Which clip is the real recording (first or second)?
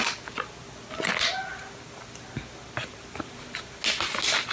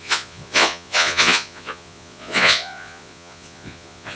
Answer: first